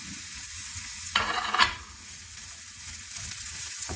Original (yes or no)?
no